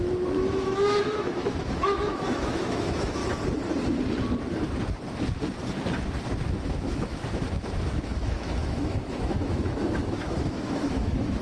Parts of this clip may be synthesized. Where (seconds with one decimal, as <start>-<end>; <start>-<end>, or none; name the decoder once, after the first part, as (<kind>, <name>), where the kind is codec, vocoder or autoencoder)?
0.0-3.2 (autoencoder, DAC-VAE); 6.5-11.4